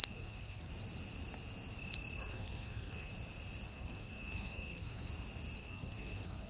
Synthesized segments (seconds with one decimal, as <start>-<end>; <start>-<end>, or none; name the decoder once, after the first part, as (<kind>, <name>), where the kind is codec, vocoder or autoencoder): 0.0-0.7 (codec, SNAC); 2.3-3.1; 3.7-5.1; 5.6-6.5